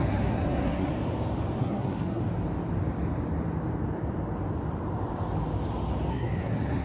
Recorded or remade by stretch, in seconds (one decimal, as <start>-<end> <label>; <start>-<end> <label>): 0.0-0.9 remade; 0.9-1.6 recorded; 1.6-2.2 remade; 2.2-6.1 recorded; 6.1-6.8 remade